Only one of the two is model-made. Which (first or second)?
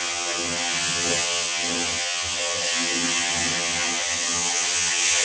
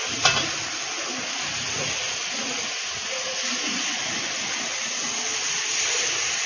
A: first